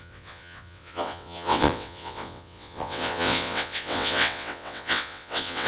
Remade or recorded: remade